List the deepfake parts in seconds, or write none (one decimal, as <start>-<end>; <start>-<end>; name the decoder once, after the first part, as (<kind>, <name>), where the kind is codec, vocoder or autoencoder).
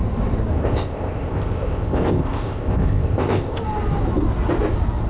0.5-3.6 (codec, ZipCodec)